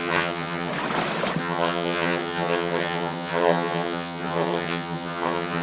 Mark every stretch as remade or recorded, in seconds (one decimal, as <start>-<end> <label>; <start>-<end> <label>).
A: 0.0-0.7 remade; 0.7-1.4 recorded; 1.4-5.6 remade